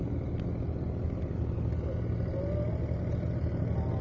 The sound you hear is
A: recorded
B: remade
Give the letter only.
A